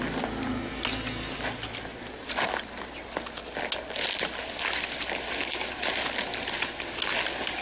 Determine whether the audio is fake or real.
real